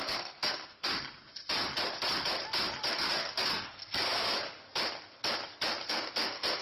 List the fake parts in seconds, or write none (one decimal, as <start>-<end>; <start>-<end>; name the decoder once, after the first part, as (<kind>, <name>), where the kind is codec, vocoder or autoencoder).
0.0-0.9 (codec, SNAC); 2.9-4.3; 5.9-6.6